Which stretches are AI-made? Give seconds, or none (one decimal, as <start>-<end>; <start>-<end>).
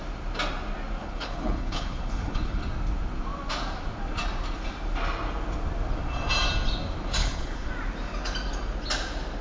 1.0-2.6; 7.2-7.7